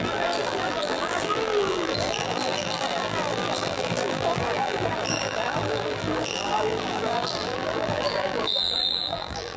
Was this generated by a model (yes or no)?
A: yes